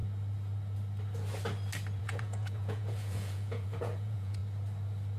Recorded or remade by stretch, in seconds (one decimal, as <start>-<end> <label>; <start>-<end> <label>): 0.0-2.0 recorded; 2.0-4.4 remade; 4.4-5.2 recorded